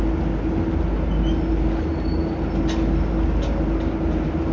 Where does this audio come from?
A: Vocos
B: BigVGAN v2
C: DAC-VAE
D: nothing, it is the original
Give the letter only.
D